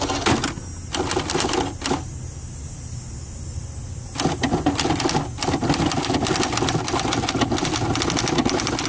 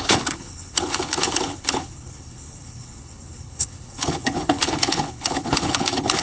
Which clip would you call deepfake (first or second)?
second